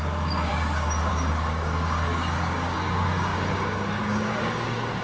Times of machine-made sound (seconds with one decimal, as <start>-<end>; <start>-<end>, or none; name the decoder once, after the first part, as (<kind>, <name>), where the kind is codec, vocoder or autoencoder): 0.0-0.5 (codec, DAC); 1.1-5.0